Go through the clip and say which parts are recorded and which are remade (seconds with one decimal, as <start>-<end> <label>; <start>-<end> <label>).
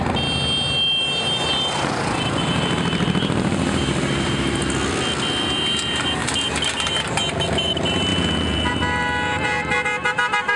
0.0-8.1 recorded; 8.1-8.7 remade; 8.7-10.6 recorded